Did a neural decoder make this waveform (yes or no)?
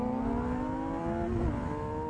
no